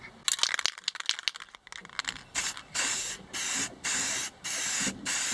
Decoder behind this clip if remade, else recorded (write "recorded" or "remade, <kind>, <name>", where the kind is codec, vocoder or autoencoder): recorded